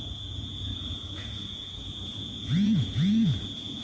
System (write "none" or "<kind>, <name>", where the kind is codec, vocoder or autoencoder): vocoder, Vocos